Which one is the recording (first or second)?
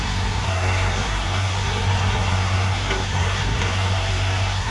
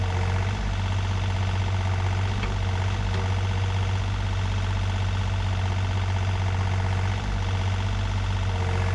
second